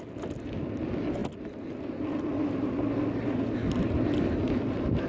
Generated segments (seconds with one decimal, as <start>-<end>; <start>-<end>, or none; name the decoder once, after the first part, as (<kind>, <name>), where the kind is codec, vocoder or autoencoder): none